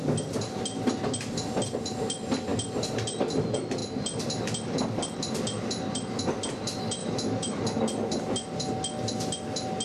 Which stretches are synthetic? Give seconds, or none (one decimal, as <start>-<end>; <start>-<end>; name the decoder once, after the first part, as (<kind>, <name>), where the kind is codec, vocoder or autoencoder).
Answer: 7.0-7.8 (autoencoder, DAC-VAE)